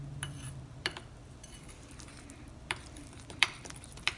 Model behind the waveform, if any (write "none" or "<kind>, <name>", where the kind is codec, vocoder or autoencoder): vocoder, BigVGAN v2